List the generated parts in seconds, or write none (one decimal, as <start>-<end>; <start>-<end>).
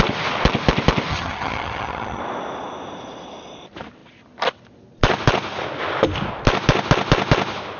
1.1-2.2